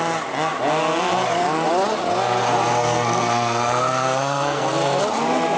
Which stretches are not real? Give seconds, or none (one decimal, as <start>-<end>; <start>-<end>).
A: 2.7-5.0